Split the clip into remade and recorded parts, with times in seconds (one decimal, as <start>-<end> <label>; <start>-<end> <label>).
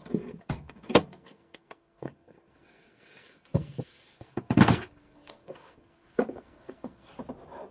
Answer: 0.0-7.1 remade; 7.1-7.7 recorded